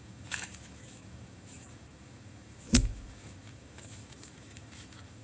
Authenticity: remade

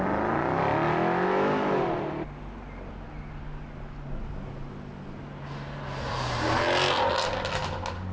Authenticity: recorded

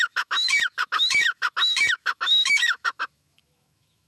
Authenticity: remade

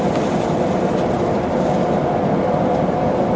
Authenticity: remade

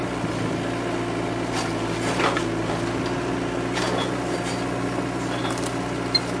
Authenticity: recorded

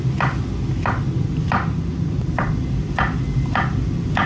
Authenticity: recorded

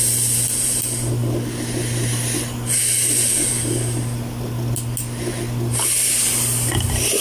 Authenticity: recorded